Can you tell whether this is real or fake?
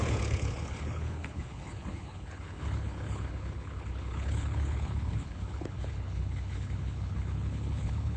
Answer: fake